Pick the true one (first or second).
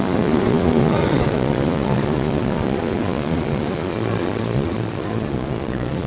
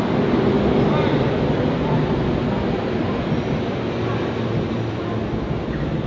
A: second